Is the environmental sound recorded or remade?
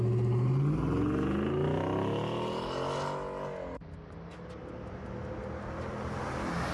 recorded